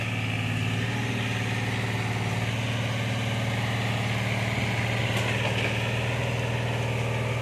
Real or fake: real